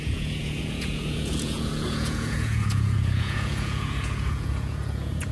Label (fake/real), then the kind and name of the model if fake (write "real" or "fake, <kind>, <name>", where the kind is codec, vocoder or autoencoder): fake, vocoder, Vocos